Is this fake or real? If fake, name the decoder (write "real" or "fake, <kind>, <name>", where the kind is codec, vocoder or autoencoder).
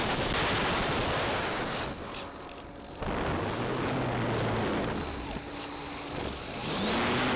real